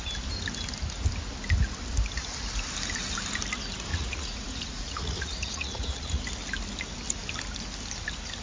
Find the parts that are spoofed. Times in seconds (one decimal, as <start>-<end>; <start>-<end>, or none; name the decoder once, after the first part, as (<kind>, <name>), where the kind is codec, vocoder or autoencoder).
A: 3.9-6.2 (vocoder, Vocos)